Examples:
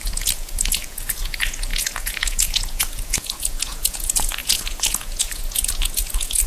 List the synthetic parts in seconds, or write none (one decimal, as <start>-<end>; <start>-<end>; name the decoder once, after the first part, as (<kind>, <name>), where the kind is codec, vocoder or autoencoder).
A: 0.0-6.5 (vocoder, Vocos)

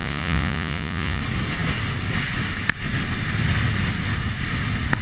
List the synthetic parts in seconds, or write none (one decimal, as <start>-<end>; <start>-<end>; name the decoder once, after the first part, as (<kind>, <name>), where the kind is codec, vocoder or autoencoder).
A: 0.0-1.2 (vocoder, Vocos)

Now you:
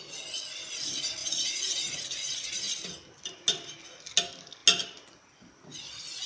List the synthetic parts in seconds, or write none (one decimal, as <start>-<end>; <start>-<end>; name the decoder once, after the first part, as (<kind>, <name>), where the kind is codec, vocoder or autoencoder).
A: none

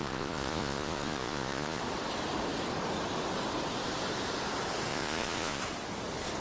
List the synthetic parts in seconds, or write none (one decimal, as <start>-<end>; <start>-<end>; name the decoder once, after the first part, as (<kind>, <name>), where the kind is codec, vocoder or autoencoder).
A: 0.0-1.8 (vocoder, Vocos); 4.9-5.6

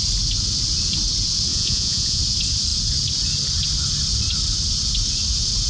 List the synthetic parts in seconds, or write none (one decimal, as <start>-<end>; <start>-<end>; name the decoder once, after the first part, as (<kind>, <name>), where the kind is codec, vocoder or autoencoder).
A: 1.5-2.2 (vocoder, Vocos)

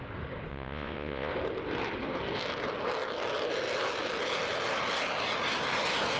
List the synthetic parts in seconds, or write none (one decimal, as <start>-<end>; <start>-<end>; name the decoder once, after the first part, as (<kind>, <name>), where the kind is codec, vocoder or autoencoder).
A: 0.5-1.3 (vocoder, Vocos)